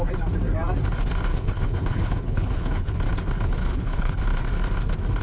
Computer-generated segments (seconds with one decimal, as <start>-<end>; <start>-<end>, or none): 1.3-2.9; 3.6-4.2

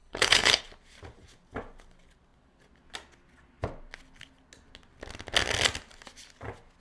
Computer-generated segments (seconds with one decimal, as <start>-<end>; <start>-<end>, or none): 0.0-0.6

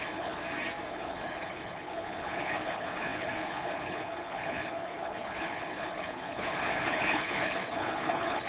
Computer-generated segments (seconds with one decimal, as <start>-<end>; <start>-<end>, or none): 0.0-0.4; 0.9-8.5

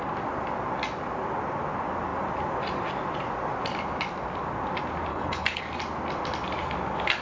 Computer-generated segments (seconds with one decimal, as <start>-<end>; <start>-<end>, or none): 5.1-5.6

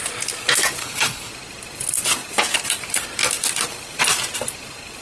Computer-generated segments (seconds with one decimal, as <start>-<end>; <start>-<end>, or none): 0.8-1.3